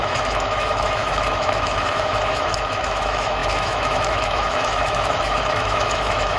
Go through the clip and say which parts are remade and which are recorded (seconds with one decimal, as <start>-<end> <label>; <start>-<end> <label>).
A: 0.0-6.4 remade